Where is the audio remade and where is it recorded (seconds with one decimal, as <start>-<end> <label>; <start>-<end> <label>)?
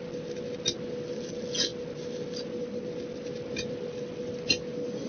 0.0-5.1 recorded